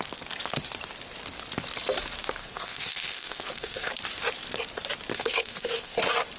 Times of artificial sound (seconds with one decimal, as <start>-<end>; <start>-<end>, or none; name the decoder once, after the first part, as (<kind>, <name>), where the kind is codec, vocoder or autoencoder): 2.4-3.9 (codec, SNAC); 5.1-6.0